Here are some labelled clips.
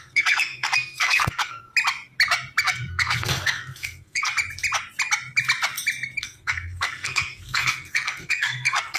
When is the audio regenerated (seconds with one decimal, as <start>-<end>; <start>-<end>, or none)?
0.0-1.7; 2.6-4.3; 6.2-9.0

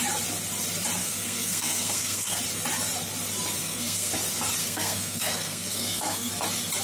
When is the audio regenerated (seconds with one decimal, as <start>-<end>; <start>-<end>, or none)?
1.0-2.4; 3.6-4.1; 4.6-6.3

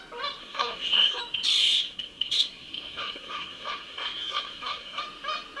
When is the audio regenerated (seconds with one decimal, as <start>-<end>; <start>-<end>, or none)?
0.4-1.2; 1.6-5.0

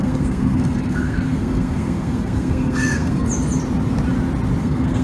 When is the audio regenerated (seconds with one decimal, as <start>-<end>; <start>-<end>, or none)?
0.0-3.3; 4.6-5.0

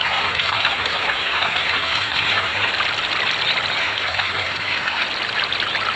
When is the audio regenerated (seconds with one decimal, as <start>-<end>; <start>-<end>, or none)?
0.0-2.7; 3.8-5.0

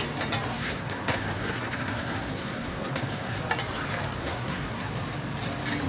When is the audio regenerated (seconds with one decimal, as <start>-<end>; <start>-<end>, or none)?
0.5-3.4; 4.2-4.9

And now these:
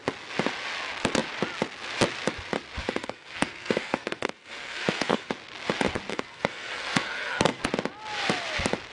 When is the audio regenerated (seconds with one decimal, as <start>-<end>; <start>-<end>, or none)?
2.8-5.3; 6.1-7.6